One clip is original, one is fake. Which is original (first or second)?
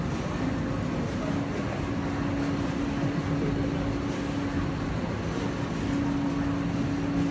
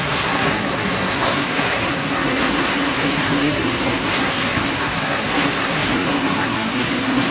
first